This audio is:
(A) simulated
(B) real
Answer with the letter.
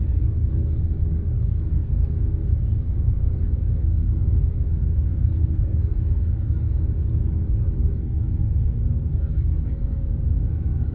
A